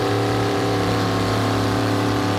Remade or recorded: remade